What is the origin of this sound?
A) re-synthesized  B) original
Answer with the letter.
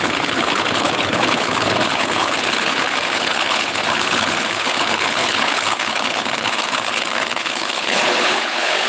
A